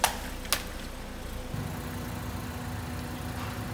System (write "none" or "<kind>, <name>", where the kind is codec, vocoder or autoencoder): none